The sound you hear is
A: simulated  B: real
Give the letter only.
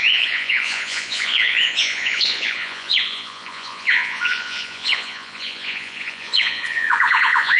A